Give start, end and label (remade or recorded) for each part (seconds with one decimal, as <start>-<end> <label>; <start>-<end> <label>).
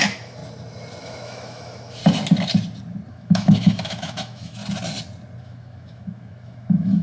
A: 0.0-0.4 remade; 0.4-1.0 recorded; 1.0-2.0 remade; 2.0-3.1 recorded; 3.1-4.6 remade; 4.6-5.4 recorded; 5.4-7.0 remade